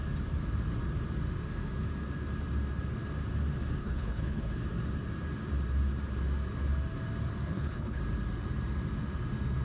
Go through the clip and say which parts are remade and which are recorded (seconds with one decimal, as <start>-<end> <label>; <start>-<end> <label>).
0.0-3.8 recorded; 3.8-4.6 remade; 4.6-7.5 recorded; 7.5-8.0 remade; 8.0-9.6 recorded